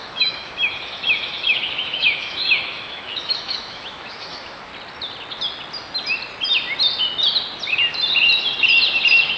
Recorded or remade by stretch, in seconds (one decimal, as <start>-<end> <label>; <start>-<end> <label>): 0.0-4.7 remade; 4.7-9.4 recorded